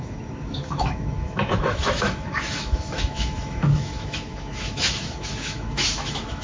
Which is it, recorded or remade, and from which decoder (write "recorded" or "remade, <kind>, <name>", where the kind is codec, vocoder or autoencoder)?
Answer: remade, autoencoder, DAC-VAE